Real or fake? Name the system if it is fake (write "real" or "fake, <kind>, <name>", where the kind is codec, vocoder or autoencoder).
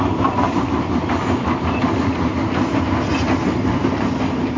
real